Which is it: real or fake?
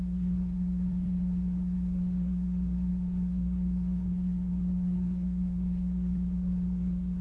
fake